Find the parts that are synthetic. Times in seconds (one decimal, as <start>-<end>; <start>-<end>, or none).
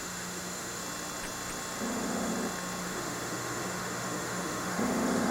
0.0-0.8; 1.9-2.3; 2.8-5.3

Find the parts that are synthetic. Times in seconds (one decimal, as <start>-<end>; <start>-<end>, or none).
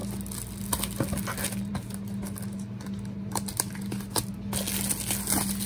none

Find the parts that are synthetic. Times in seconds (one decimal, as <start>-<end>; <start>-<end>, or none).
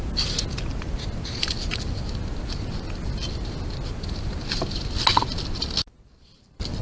none